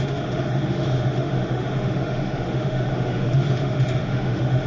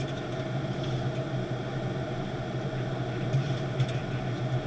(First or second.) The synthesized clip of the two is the first